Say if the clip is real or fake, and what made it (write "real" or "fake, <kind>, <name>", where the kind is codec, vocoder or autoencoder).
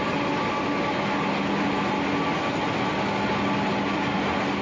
real